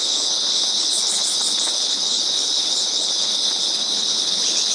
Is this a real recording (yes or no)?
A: no